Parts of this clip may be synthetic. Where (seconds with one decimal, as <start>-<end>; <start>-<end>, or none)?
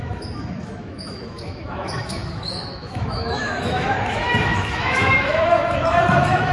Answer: 0.0-6.5